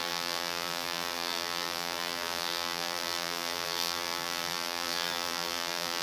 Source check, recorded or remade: remade